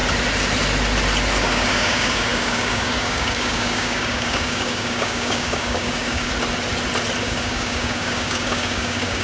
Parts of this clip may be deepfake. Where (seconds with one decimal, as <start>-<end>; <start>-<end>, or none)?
1.4-6.3; 7.2-9.2